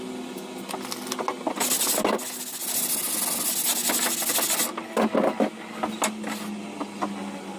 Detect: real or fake real